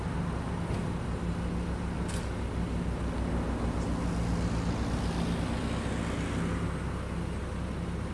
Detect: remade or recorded recorded